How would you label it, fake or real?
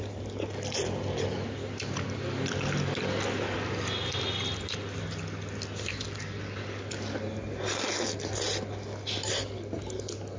real